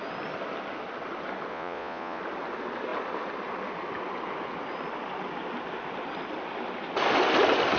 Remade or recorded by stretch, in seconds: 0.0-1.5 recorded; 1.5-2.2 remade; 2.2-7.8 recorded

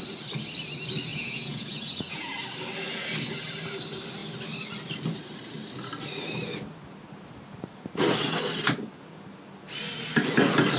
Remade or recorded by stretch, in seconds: 0.0-1.1 recorded; 1.1-2.3 remade; 2.3-10.8 recorded

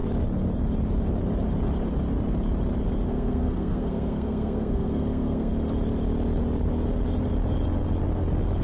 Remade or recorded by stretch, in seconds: 0.0-3.1 recorded; 3.1-5.5 remade; 5.5-8.6 recorded